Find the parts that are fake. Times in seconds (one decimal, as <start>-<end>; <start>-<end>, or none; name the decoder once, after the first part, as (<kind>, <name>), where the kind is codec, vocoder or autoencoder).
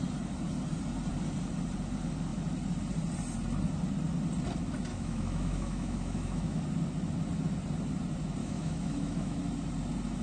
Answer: 4.9-6.6 (autoencoder, DAC-VAE); 8.4-9.4